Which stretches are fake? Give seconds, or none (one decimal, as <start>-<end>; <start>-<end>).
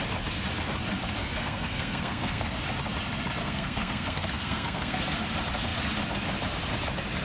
1.2-2.6; 3.4-5.0